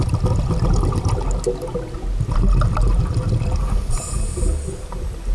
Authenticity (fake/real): real